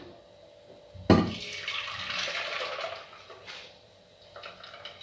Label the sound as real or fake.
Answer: real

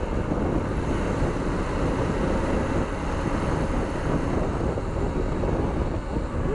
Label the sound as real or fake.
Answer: real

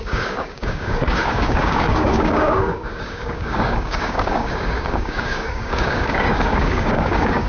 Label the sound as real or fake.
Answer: fake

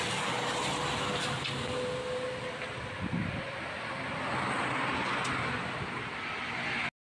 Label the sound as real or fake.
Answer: real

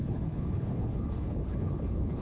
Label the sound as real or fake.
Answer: fake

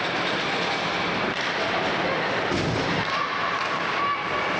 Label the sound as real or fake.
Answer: real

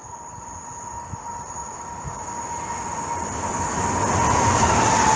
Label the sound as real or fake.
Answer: real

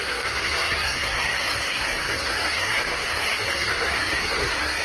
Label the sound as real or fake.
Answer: fake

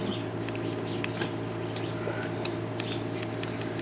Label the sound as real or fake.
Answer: real